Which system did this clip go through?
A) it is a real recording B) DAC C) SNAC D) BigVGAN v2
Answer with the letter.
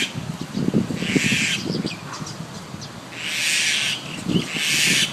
A